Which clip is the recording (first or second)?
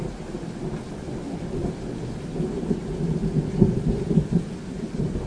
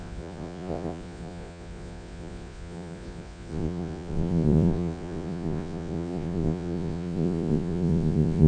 first